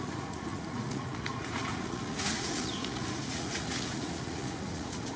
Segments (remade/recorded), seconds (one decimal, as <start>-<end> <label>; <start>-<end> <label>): 0.0-5.2 remade